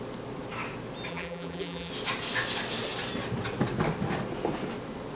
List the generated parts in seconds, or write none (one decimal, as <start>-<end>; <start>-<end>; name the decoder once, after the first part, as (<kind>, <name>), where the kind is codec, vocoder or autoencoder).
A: 1.1-1.9 (vocoder, BigVGAN v2)